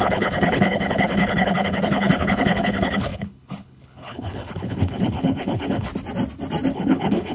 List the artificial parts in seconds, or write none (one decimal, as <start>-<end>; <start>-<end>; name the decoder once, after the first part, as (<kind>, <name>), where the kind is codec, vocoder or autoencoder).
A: 0.0-5.9 (codec, HILCodec); 6.7-7.3